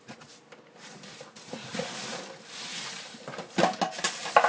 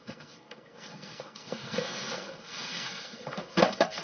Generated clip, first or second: second